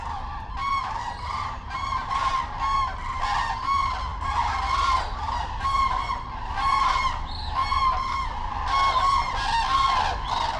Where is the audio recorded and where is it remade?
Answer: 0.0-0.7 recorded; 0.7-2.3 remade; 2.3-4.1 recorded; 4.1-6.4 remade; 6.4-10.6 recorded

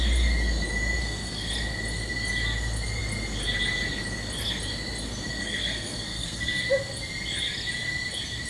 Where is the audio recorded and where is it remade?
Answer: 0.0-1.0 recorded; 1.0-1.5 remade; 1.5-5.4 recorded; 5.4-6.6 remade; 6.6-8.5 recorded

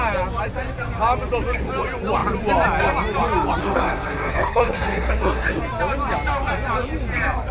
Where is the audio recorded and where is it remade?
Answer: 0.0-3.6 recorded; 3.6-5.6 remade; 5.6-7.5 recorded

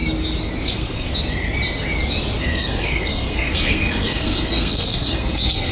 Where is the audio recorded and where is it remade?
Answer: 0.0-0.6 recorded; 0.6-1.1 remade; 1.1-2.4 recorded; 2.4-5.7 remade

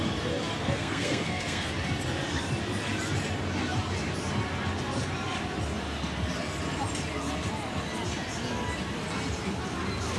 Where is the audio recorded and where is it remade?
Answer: 0.0-0.6 recorded; 0.6-1.7 remade; 1.7-10.2 recorded

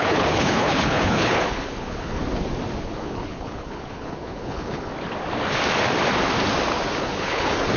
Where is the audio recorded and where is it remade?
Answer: 0.0-2.2 remade; 2.2-2.8 recorded; 2.8-4.9 remade; 4.9-7.0 recorded; 7.0-7.8 remade

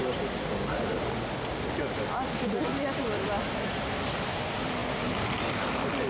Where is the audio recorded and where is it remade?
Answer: 0.0-6.1 recorded